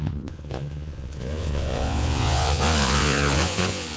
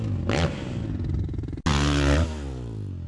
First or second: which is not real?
first